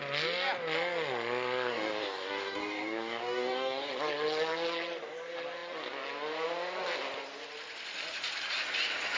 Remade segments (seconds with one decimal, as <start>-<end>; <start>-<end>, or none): 1.7-3.9